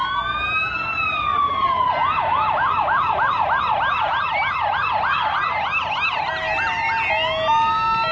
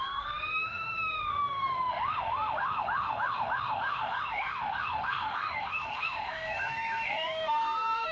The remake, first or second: second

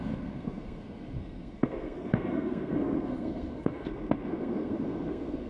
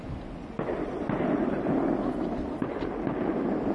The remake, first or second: first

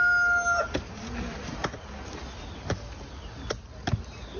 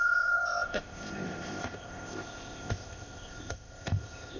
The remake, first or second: second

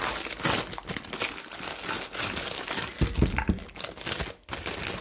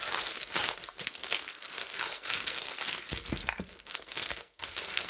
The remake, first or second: second